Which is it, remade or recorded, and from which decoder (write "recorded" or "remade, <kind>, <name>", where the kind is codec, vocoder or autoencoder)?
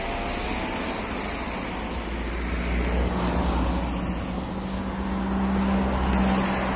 recorded